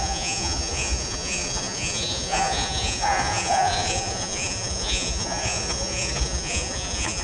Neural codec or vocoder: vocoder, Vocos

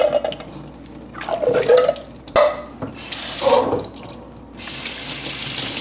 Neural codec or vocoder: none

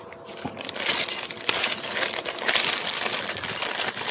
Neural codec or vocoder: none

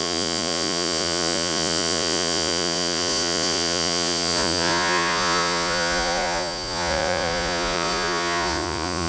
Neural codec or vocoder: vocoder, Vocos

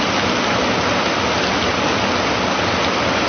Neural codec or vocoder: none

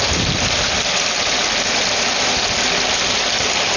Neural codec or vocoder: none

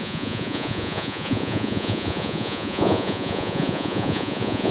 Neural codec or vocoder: vocoder, Vocos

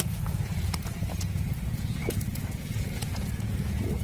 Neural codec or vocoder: vocoder, Vocos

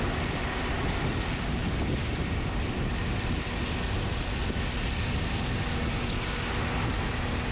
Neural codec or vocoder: none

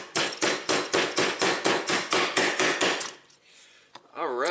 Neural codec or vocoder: vocoder, Vocos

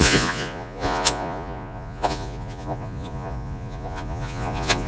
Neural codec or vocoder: vocoder, Vocos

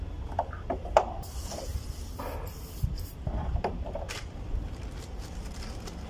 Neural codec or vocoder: none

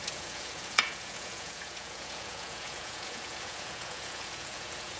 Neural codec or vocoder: vocoder, Vocos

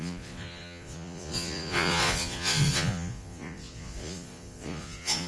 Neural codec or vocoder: vocoder, Vocos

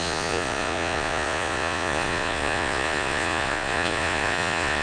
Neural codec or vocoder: vocoder, Vocos